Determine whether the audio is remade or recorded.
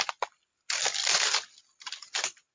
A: recorded